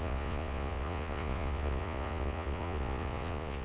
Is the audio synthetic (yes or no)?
yes